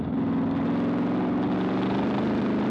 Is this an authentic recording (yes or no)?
yes